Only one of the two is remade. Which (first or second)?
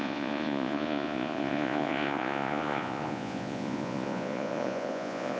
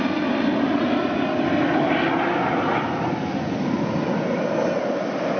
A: first